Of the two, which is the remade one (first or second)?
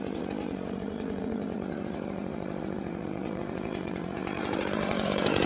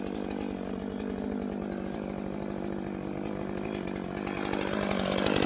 first